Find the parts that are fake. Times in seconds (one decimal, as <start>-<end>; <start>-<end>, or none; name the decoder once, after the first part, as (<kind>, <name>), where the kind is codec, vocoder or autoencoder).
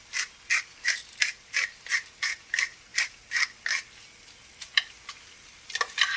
none